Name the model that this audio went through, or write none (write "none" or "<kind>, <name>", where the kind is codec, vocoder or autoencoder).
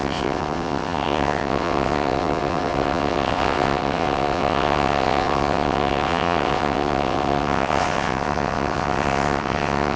vocoder, WaveNeXt